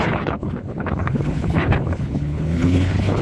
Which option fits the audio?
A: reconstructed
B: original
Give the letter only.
A